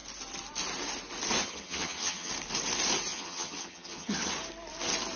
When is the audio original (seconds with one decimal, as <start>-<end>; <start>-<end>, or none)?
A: 0.0-1.4; 2.3-3.1; 4.3-5.2